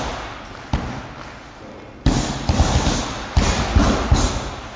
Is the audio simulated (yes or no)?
no